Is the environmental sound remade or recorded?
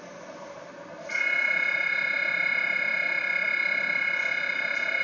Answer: recorded